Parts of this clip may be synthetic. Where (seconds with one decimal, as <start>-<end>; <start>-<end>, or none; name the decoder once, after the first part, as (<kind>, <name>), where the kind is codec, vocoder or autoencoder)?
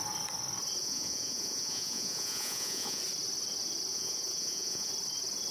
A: 0.8-3.0 (vocoder, Vocos); 3.9-4.9